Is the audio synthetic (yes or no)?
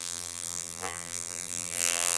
yes